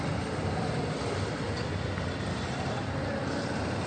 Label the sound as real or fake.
real